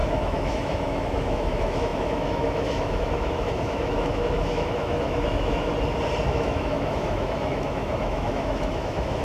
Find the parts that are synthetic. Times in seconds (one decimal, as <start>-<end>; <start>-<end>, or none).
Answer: 0.0-5.7; 6.3-9.2